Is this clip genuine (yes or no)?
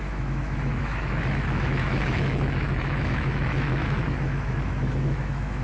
no